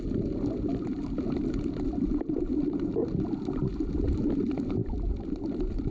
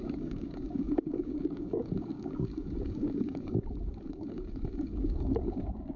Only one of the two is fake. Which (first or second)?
second